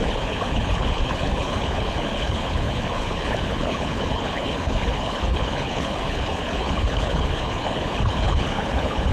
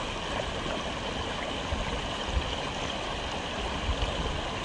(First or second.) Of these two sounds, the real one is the second